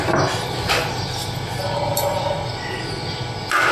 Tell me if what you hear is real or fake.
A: real